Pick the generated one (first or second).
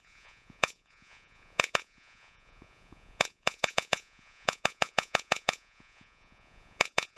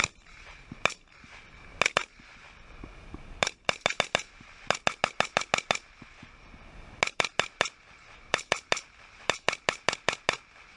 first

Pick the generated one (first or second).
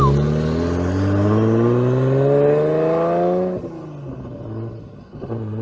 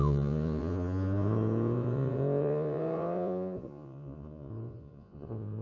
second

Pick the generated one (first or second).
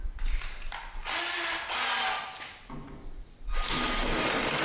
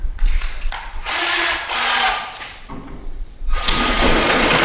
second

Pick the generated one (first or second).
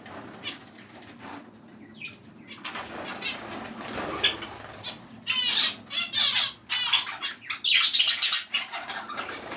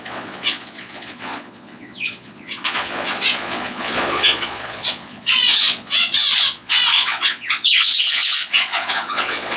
second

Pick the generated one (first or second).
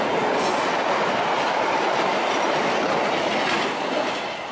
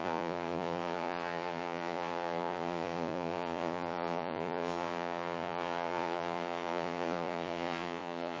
second